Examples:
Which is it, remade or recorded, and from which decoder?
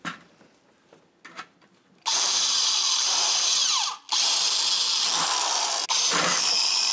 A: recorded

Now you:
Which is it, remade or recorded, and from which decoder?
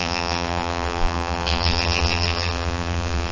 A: remade, vocoder, BigVGAN v2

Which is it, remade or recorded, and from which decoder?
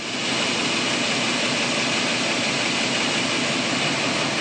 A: recorded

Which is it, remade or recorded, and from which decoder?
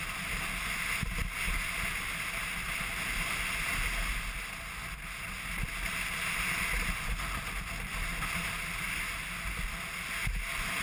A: recorded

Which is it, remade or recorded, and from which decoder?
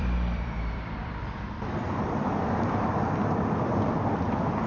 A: remade, vocoder, BigVGAN v2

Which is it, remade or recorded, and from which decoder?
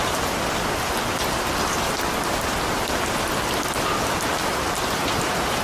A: recorded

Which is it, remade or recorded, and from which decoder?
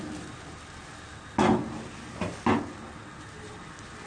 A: recorded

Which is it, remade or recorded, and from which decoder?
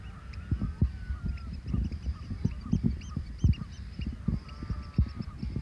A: recorded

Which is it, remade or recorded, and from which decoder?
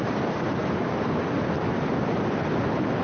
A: recorded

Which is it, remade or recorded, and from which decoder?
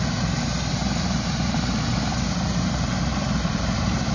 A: remade, vocoder, BigVGAN v2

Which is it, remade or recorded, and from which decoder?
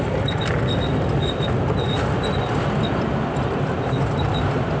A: recorded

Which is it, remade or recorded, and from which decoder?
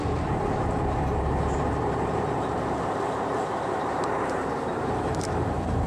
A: remade, vocoder, BigVGAN v2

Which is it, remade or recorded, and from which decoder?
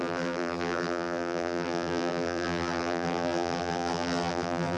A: remade, vocoder, BigVGAN v2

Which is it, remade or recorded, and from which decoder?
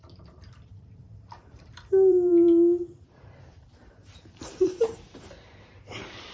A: remade, vocoder, BigVGAN v2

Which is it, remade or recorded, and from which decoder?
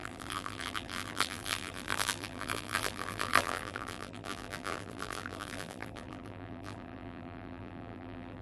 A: remade, vocoder, BigVGAN v2